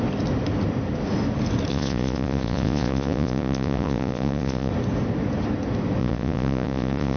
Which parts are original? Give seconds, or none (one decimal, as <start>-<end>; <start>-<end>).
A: 0.0-1.7; 4.7-6.0

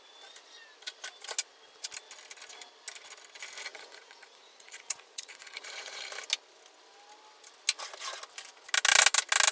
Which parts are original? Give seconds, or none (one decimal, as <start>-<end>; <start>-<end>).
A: 0.0-3.7; 6.0-9.5

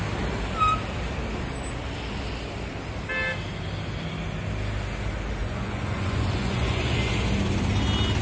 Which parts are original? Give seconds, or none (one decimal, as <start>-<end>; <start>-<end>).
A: 0.0-5.4; 7.1-8.2

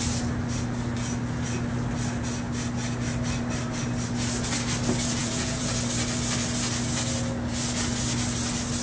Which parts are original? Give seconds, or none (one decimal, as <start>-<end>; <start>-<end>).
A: 0.0-5.2; 5.7-8.8

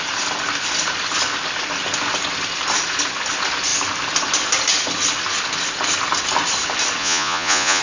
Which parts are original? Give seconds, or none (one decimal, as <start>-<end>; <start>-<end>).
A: 0.0-7.0

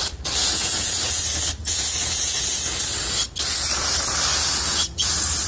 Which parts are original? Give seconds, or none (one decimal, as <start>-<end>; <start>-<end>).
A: 0.0-0.4; 1.2-1.6; 2.6-4.3; 5.1-5.5

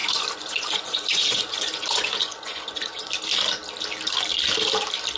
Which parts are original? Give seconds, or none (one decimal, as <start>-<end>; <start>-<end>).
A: 3.1-5.2